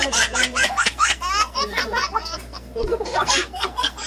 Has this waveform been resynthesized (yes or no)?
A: yes